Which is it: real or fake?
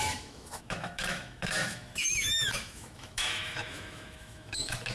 fake